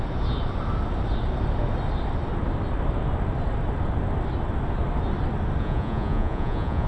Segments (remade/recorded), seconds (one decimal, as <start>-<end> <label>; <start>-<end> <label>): 0.0-5.6 recorded; 5.6-6.9 remade